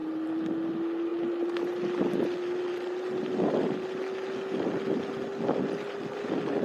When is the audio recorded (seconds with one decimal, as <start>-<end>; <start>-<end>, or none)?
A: 0.0-6.6